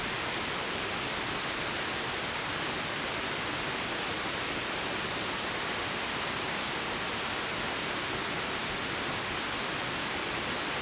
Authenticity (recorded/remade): recorded